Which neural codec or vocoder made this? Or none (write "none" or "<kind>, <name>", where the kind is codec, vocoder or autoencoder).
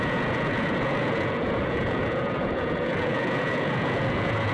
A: vocoder, Vocos